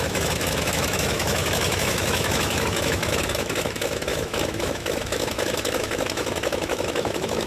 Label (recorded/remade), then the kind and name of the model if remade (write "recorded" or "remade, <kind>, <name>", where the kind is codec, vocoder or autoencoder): remade, autoencoder, DAC-VAE